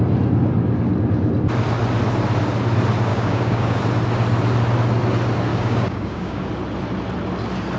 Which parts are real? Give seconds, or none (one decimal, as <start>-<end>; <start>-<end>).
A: 0.0-3.1; 3.8-5.5; 6.5-7.8